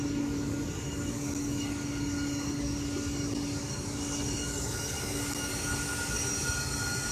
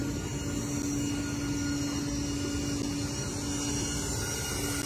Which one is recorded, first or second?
second